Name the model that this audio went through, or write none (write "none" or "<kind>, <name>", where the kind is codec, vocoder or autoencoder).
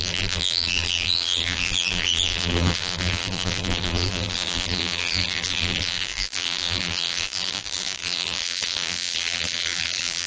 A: vocoder, BigVGAN v2